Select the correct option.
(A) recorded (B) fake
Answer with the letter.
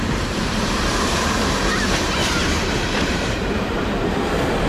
B